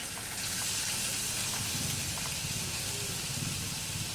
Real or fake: real